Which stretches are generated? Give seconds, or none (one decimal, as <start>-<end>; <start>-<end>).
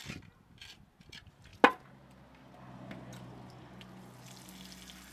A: none